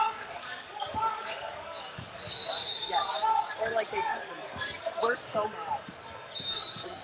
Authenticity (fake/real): fake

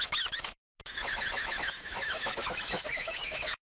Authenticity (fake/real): fake